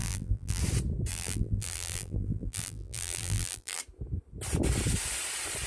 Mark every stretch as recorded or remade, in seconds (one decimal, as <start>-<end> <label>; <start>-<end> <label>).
0.0-0.6 remade; 0.6-1.1 recorded; 1.1-3.8 remade; 3.8-5.7 recorded

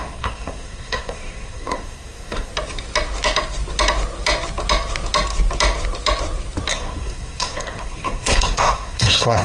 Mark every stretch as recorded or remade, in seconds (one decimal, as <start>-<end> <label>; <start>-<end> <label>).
0.0-2.5 remade; 2.5-6.7 recorded; 6.7-9.4 remade

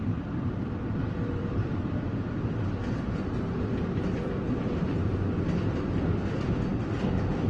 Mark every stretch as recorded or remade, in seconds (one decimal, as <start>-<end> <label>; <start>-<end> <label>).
0.0-7.5 remade

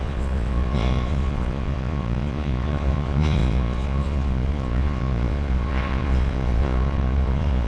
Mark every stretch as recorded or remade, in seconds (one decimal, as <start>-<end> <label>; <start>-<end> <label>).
0.0-7.7 remade